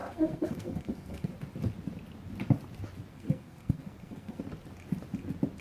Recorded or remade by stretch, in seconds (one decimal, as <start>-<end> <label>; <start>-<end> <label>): 0.0-1.3 remade; 1.3-3.1 recorded; 3.1-4.4 remade; 4.4-5.6 recorded